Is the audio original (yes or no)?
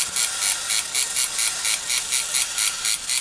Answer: yes